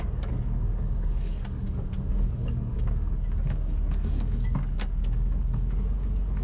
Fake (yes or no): yes